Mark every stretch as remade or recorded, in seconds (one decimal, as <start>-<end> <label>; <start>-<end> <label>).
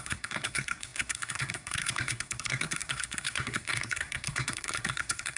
0.0-5.4 remade